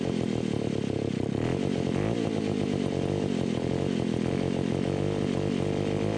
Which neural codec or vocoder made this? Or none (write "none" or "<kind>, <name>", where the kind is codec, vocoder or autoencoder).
none